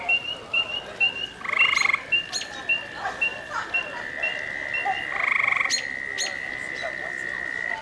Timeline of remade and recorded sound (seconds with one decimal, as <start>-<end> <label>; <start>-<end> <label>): 0.0-7.8 remade